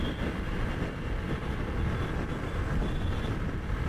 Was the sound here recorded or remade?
recorded